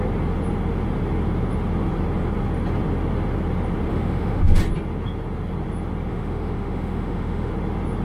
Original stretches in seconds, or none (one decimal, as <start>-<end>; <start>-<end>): 0.0-3.9; 4.6-6.1; 7.5-8.0